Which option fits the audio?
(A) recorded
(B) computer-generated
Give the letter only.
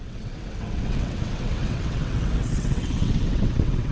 B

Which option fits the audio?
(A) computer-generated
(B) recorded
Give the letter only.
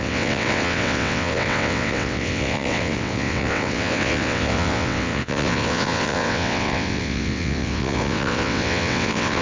A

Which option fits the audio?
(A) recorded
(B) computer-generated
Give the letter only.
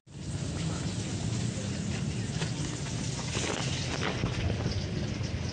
A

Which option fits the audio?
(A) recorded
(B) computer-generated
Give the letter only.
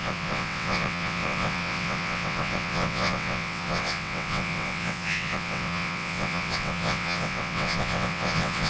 B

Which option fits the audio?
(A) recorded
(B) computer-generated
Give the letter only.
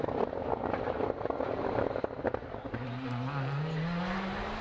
A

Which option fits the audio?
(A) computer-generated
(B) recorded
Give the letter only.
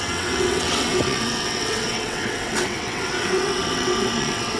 A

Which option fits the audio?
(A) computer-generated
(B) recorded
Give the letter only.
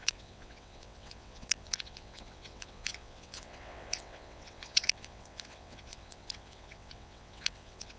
A